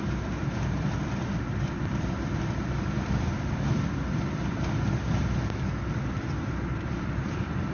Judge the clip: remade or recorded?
remade